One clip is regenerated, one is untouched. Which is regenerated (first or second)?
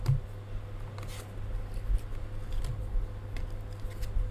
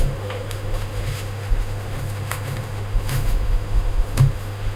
second